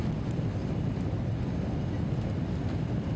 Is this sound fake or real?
real